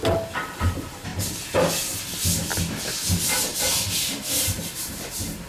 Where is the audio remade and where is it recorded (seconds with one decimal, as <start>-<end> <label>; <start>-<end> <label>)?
0.0-5.5 recorded